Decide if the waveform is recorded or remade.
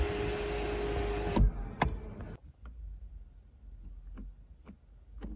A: recorded